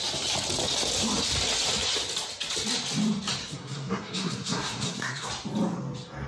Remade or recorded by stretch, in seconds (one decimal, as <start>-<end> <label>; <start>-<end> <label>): 0.0-3.4 recorded; 3.4-5.3 remade; 5.3-6.3 recorded